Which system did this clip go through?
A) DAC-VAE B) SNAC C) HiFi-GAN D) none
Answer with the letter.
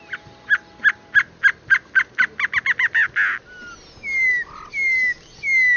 D